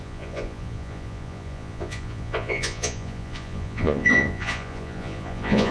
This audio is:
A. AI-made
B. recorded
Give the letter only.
A